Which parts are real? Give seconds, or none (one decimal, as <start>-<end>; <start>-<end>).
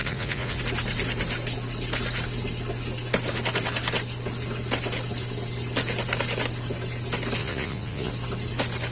0.6-7.4; 8.1-8.9